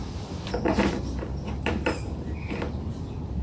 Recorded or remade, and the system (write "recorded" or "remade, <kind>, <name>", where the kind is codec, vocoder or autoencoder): recorded